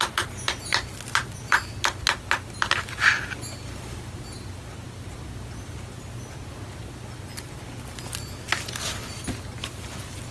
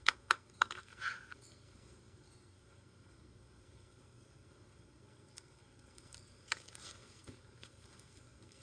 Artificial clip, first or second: second